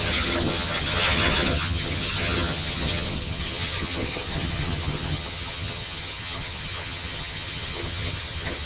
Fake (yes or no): yes